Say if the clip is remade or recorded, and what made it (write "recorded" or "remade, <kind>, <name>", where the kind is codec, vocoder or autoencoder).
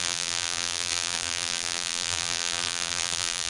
remade, vocoder, BigVGAN v2